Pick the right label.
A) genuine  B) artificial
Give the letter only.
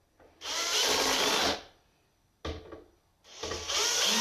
A